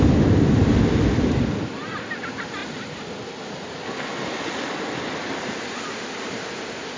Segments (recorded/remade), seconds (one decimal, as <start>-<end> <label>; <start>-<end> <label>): 0.0-7.0 recorded